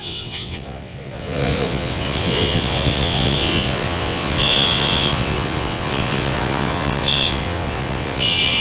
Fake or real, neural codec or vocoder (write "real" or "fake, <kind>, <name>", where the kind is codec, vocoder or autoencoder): fake, vocoder, WaveNeXt